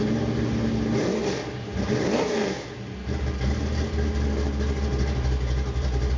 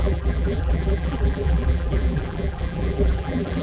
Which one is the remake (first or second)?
second